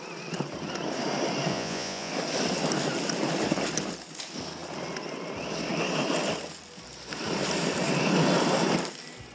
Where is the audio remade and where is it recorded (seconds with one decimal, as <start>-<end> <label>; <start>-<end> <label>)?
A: 0.0-1.5 recorded; 1.5-2.1 remade; 2.1-9.3 recorded